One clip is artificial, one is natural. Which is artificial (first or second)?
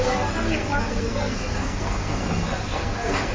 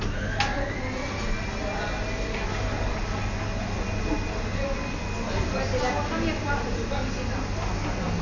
first